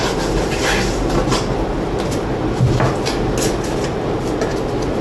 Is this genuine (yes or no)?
yes